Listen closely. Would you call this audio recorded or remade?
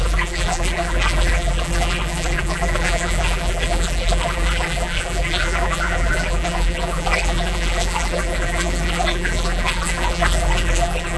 remade